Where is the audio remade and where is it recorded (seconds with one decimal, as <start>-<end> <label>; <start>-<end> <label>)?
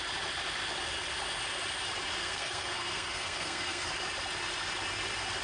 0.0-2.2 recorded; 2.2-3.9 remade; 3.9-5.4 recorded